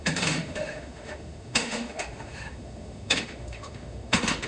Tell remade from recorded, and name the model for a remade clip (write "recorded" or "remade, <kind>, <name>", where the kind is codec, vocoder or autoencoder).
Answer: remade, autoencoder, DAC-VAE